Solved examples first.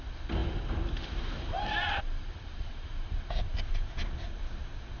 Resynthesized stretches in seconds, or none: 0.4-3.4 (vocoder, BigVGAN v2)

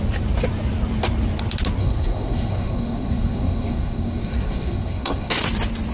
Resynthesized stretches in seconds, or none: 1.8-5.3 (codec, SNAC)

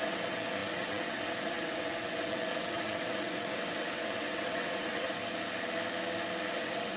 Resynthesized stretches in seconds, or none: 0.0-5.2 (vocoder, WaveNeXt); 6.5-7.0

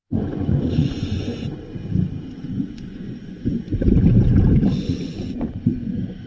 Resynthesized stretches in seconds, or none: 0.0-1.3 (vocoder, Vocos); 2.3-3.6; 4.7-6.3

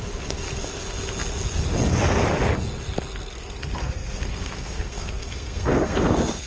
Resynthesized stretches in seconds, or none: 3.8-6.5 (codec, SNAC)